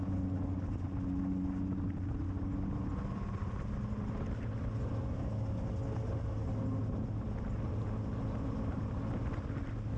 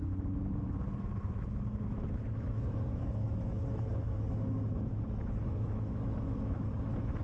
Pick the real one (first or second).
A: first